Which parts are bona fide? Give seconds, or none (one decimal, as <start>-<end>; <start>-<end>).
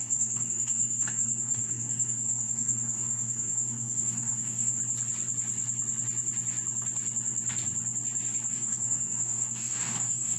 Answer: 4.8-8.5